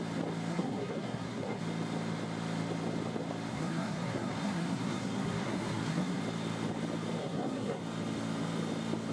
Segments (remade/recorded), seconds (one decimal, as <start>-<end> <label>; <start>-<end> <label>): 0.0-0.5 recorded; 0.5-1.6 remade; 1.6-3.5 recorded; 3.5-6.2 remade; 6.2-7.2 recorded; 7.2-7.8 remade; 7.8-9.1 recorded